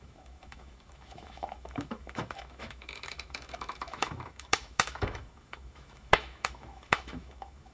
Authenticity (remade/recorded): remade